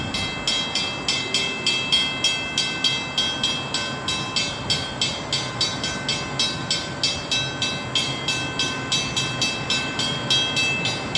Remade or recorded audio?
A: recorded